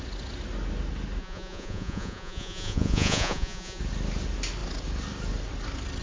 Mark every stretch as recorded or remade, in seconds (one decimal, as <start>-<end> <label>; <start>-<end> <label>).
0.0-1.2 recorded; 1.2-3.8 remade; 3.8-6.0 recorded